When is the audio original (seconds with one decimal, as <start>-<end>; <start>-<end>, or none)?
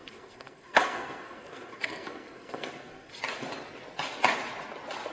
3.1-5.1